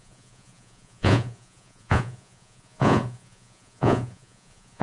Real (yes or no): no